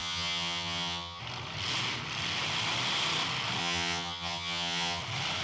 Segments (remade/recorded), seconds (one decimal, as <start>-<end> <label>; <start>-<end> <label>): 0.0-1.2 remade; 1.2-3.6 recorded; 3.6-5.0 remade; 5.0-5.4 recorded